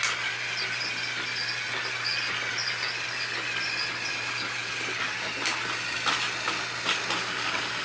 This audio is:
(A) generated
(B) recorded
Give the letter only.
B